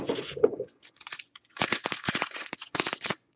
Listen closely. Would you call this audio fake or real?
fake